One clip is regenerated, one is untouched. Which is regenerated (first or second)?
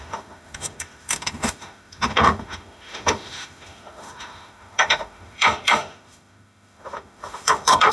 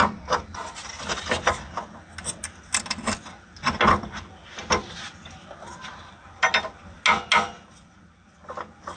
first